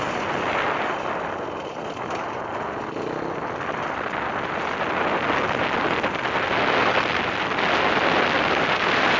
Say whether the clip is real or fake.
real